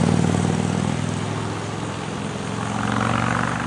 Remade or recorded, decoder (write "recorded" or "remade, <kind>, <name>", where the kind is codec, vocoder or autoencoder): recorded